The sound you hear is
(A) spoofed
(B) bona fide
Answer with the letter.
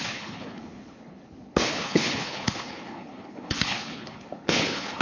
A